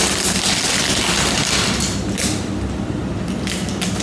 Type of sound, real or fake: real